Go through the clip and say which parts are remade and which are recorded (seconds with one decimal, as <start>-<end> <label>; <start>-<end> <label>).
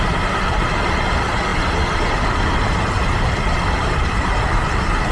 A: 0.0-1.5 remade; 1.5-2.1 recorded; 2.1-5.1 remade